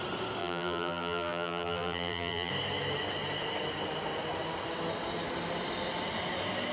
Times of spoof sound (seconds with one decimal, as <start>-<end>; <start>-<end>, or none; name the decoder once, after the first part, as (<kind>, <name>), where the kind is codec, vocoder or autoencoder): 0.4-2.5 (vocoder, BigVGAN v2)

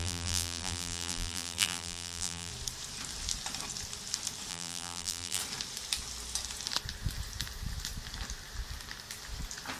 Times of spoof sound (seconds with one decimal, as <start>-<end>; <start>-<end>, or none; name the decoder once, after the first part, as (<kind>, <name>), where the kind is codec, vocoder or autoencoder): 0.0-2.5 (vocoder, BigVGAN v2); 4.5-5.4

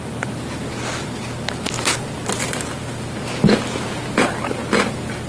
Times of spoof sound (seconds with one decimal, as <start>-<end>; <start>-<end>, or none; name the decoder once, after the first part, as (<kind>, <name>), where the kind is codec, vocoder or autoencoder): 0.0-0.7 (vocoder, BigVGAN v2); 3.9-5.3

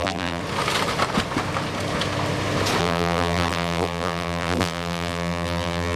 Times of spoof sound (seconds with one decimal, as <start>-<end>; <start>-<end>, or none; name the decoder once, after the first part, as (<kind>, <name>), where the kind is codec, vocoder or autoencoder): 0.0-0.4 (vocoder, BigVGAN v2); 2.8-6.0